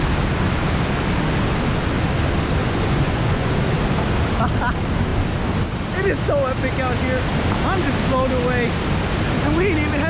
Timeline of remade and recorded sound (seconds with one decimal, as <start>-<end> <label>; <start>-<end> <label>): 0.0-2.6 recorded; 2.6-3.5 remade; 3.5-10.1 recorded